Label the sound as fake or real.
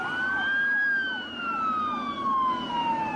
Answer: real